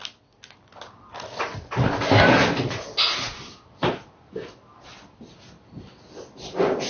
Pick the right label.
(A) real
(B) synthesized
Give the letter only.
A